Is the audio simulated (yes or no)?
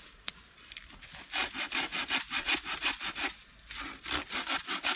no